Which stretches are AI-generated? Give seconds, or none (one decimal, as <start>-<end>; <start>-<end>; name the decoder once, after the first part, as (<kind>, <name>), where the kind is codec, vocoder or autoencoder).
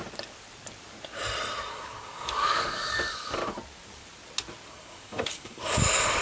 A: 1.7-3.4 (codec, DAC); 4.7-6.2